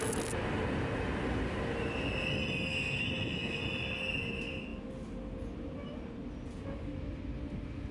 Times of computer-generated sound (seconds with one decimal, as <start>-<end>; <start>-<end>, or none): 2.7-3.6